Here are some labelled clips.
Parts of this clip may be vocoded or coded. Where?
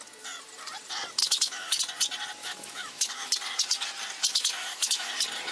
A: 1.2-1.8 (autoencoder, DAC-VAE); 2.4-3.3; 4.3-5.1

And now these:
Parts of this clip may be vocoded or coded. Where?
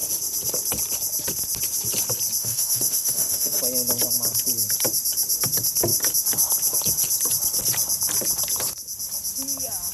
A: 2.4-3.6 (autoencoder, DAC-VAE)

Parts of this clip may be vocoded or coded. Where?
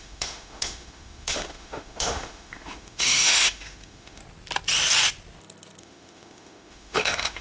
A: 0.0-4.2 (autoencoder, DAC-VAE); 5.8-7.4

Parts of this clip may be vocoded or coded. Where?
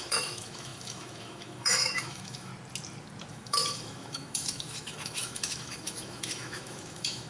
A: 0.0-2.5 (autoencoder, DAC-VAE); 3.3-7.3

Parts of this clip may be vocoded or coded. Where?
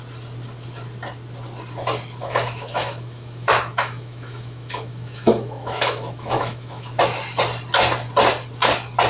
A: 2.2-6.9 (autoencoder, DAC-VAE)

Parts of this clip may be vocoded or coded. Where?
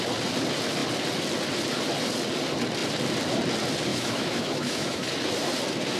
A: 3.9-5.1 (autoencoder, DAC-VAE)